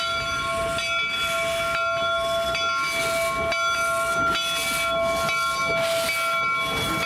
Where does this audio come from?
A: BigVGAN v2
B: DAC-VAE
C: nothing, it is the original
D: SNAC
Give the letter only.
C